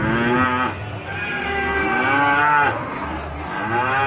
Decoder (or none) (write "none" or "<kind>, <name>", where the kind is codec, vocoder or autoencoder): none